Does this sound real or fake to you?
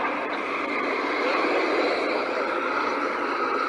fake